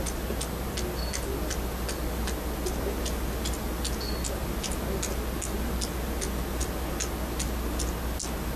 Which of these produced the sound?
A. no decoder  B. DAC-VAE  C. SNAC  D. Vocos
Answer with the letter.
A